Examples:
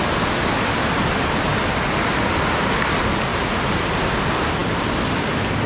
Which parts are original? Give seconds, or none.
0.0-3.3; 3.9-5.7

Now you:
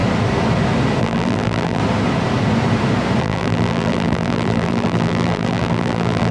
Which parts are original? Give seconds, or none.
0.0-1.0; 1.8-3.2